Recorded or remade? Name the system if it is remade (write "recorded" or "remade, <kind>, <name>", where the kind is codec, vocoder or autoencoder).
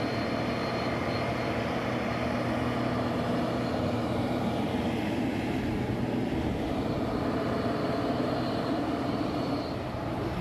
remade, vocoder, BigVGAN v2